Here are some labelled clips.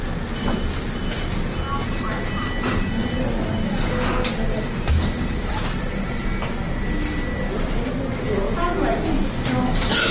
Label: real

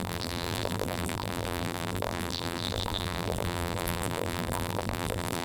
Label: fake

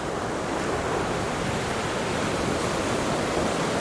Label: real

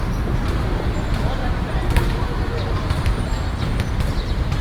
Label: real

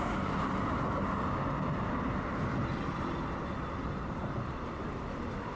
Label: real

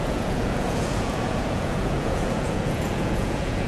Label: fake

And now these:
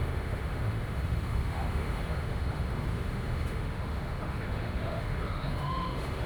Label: fake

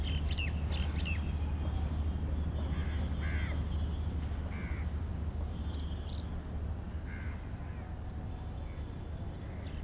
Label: real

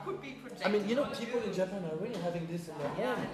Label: real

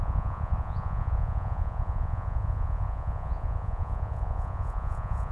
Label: fake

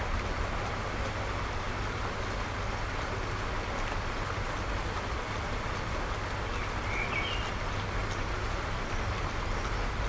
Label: real